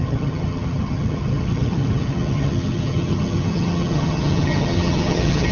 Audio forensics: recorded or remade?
remade